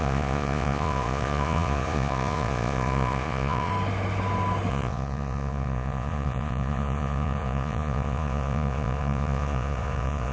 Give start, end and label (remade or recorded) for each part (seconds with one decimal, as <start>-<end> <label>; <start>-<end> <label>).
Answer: 0.0-3.7 remade; 3.7-4.7 recorded; 4.7-10.3 remade